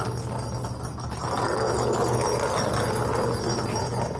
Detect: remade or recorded recorded